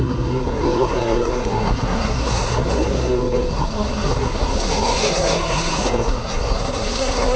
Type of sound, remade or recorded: remade